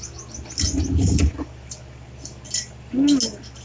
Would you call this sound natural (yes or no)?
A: yes